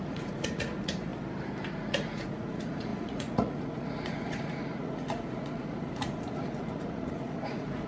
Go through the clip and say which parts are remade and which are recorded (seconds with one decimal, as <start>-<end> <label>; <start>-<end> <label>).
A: 0.0-1.1 remade; 1.1-1.7 recorded; 1.7-7.9 remade